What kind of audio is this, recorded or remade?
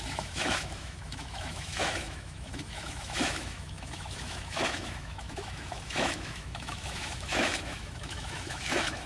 remade